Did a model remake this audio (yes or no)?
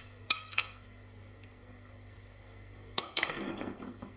yes